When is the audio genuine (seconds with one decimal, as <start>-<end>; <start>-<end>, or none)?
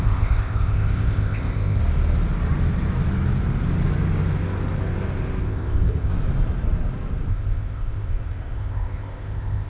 1.8-5.4; 6.1-7.3